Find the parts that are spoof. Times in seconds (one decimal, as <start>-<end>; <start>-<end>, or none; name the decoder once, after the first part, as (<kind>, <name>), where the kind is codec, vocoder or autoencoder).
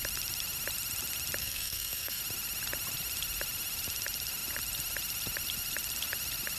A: 1.4-2.2 (codec, SNAC)